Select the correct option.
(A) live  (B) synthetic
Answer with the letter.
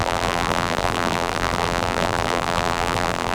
B